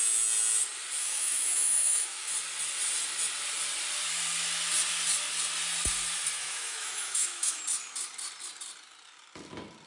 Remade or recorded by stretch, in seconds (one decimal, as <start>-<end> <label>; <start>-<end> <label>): 0.0-1.0 recorded; 1.0-2.3 remade; 2.3-6.4 recorded; 6.4-7.6 remade; 7.6-9.9 recorded